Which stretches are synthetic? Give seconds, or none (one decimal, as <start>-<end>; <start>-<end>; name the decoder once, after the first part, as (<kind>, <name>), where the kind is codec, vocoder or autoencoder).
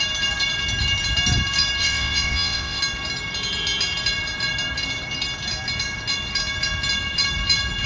1.8-2.8 (vocoder, WaveNeXt)